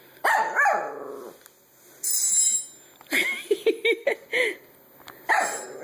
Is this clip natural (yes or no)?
yes